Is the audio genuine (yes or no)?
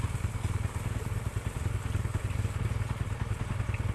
yes